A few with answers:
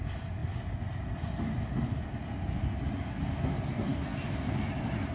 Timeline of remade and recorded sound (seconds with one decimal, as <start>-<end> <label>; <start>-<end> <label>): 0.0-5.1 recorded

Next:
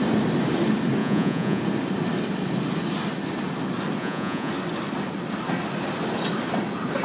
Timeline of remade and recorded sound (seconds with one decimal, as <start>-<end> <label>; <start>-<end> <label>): 0.0-1.0 recorded; 1.0-1.6 remade; 1.6-4.0 recorded; 4.0-4.5 remade; 4.5-7.0 recorded

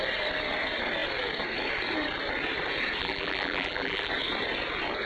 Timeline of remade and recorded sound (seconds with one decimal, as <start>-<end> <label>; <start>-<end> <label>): 0.0-3.0 recorded; 3.0-4.1 remade; 4.1-5.1 recorded